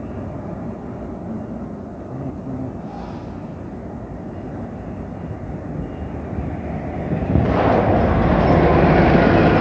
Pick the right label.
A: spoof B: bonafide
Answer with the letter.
B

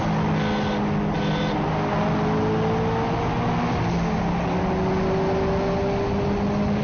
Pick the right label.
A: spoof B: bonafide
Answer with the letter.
B